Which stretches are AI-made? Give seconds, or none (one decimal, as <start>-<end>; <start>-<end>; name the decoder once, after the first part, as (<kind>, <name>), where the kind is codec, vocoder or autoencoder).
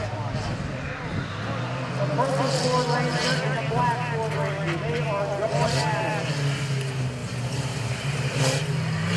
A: 7.2-8.4 (vocoder, BigVGAN v2)